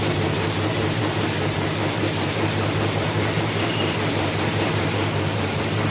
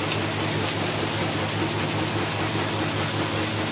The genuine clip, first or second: second